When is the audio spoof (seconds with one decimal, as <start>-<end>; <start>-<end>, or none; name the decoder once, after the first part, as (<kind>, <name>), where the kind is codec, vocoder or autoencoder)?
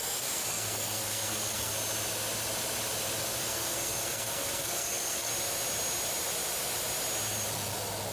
0.0-1.7 (codec, SNAC); 3.4-5.3